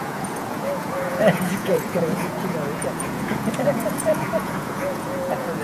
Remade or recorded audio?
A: remade